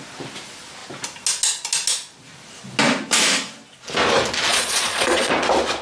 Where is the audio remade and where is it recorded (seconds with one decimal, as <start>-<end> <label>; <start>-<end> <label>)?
0.0-4.5 recorded; 4.5-5.3 remade; 5.3-5.8 recorded

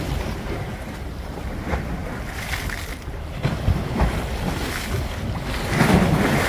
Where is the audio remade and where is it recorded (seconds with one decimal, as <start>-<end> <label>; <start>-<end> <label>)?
0.0-6.5 recorded

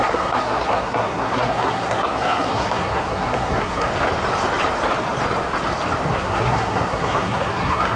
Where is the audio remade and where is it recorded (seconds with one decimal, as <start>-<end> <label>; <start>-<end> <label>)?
0.0-3.9 remade; 3.9-6.1 recorded; 6.1-8.0 remade

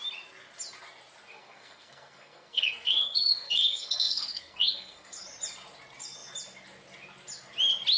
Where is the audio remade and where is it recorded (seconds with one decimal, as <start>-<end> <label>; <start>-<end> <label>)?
0.0-1.3 recorded; 1.3-5.2 remade; 5.2-8.0 recorded

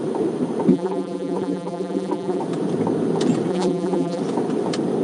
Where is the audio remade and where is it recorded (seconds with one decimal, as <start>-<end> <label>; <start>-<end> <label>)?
0.0-0.7 recorded; 0.7-2.4 remade; 2.4-3.5 recorded; 3.5-4.2 remade; 4.2-5.0 recorded

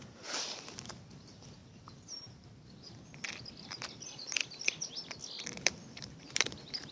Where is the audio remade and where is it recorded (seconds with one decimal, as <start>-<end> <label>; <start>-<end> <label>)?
0.0-1.6 remade; 1.6-3.7 recorded; 3.7-4.4 remade; 4.4-5.4 recorded; 5.4-6.9 remade